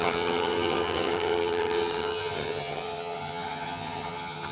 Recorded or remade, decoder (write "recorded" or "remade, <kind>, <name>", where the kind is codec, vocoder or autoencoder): remade, vocoder, HiFi-GAN